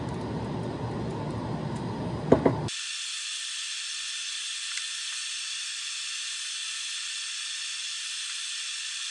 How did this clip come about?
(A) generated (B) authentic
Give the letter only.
B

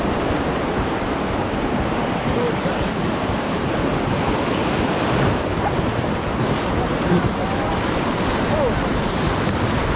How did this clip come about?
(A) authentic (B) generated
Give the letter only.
A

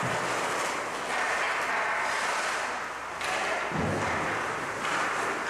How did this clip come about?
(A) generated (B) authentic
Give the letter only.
B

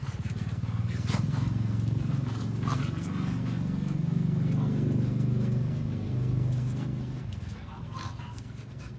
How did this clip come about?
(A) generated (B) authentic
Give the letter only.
A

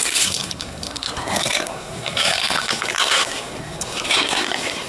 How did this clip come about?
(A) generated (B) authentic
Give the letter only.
A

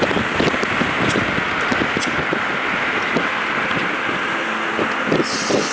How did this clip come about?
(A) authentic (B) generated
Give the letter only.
A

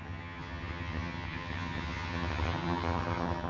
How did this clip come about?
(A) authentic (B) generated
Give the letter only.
B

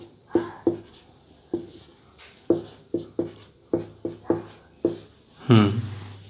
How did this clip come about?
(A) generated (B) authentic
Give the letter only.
B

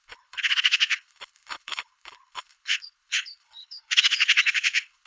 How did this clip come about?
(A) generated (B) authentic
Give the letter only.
A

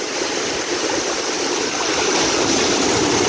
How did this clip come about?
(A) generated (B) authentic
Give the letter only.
A